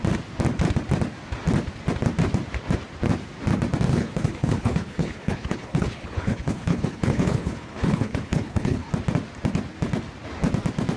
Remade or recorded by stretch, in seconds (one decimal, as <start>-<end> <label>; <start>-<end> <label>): 0.0-3.9 recorded; 3.9-8.9 remade; 8.9-11.0 recorded